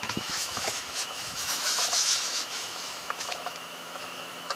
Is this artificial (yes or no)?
yes